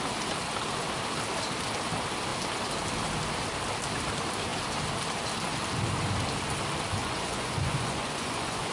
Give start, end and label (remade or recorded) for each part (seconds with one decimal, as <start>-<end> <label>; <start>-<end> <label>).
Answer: 0.0-7.0 recorded; 7.0-8.7 remade